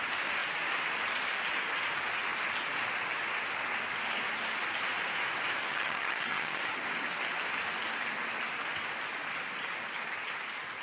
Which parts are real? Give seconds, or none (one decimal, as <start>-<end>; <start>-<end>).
0.0-5.7; 6.6-10.8